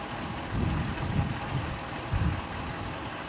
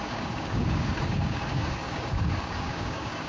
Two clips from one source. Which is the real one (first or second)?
first